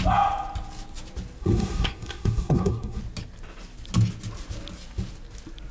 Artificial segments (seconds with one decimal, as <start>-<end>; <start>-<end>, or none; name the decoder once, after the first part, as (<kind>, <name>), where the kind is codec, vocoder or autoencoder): 1.4-3.0 (codec, SNAC)